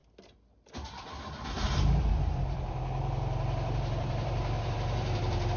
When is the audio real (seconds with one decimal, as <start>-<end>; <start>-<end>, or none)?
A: 0.0-2.1